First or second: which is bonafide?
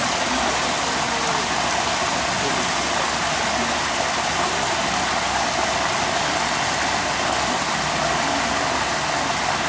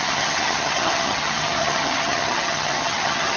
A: first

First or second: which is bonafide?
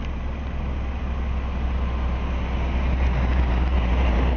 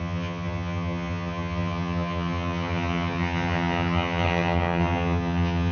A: first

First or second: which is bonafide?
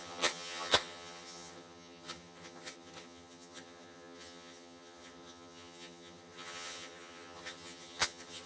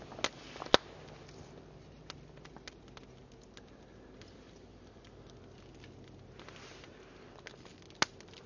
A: second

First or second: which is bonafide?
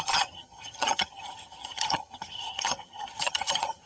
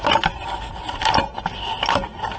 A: second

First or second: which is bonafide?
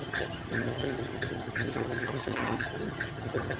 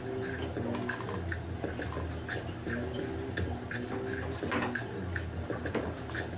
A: second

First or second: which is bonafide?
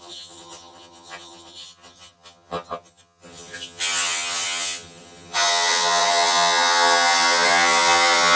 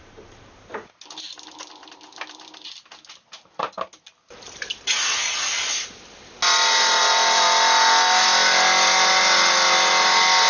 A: second